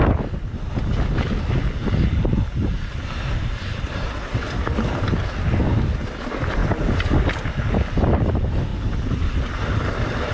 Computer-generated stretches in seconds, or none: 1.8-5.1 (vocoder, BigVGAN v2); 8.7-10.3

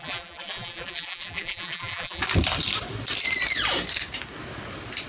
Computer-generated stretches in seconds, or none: 0.0-2.2 (vocoder, BigVGAN v2)

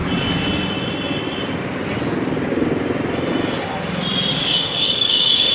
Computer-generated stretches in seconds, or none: 4.3-5.5 (codec, DAC)

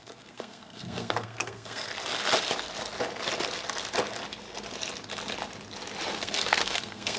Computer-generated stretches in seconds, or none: 0.0-1.9 (codec, SNAC); 6.1-7.2

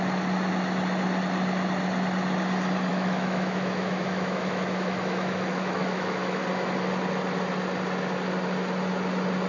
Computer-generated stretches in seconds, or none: 2.9-6.4 (autoencoder, DAC-VAE)

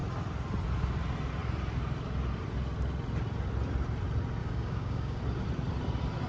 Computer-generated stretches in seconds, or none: 4.4-5.2 (codec, DAC)